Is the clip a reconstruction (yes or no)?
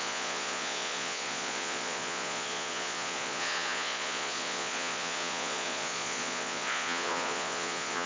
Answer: yes